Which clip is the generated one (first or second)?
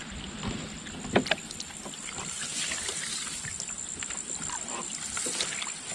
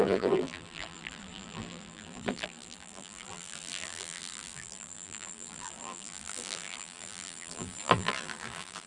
second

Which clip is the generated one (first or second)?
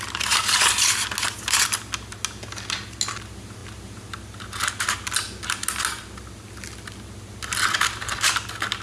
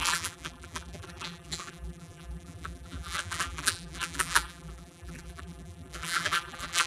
second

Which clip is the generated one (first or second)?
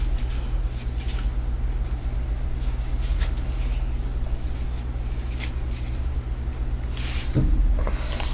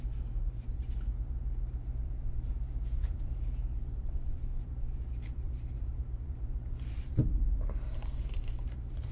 second